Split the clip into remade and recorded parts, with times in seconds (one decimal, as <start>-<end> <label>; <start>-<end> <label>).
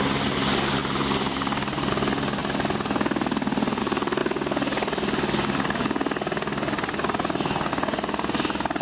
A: 0.0-8.8 recorded